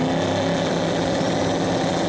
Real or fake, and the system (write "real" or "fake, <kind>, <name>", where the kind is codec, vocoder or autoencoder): real